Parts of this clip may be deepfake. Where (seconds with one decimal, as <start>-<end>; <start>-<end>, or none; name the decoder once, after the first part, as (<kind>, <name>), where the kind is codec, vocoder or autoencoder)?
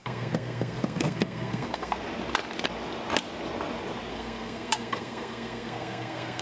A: 0.0-2.0 (codec, SNAC); 4.1-6.4